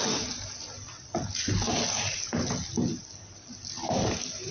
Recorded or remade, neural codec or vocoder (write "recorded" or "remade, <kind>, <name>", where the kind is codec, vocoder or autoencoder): remade, vocoder, BigVGAN v2